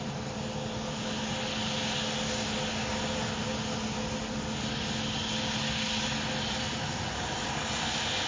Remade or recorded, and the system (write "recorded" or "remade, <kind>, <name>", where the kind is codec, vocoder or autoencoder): recorded